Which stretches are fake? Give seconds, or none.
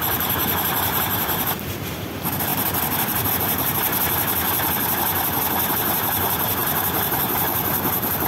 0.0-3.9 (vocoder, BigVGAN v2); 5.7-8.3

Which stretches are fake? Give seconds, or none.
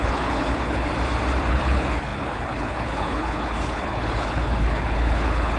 0.0-0.9 (codec, HILCodec); 1.5-5.6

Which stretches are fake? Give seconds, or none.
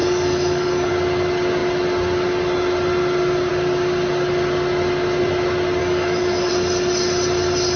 0.0-0.9 (codec, DAC); 5.8-6.5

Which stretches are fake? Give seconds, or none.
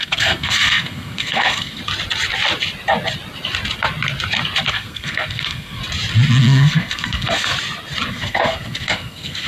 0.0-1.8 (codec, SNAC); 4.7-5.8; 6.4-7.5; 8.1-9.5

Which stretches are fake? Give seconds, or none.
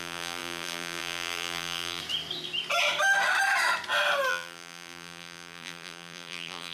0.0-2.0 (vocoder, BigVGAN v2); 4.3-6.7